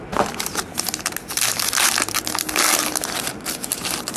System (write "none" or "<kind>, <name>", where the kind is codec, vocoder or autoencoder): none